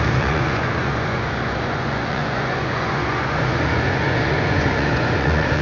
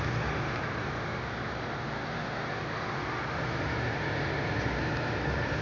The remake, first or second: first